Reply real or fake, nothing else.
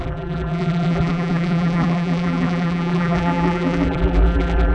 fake